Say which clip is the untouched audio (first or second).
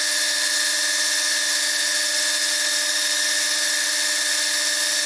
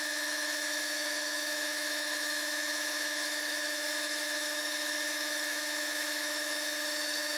first